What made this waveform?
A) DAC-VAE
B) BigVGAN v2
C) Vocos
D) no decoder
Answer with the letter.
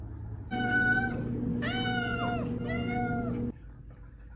D